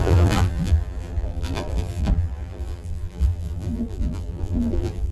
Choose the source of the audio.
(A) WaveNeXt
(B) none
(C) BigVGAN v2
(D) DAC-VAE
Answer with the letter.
C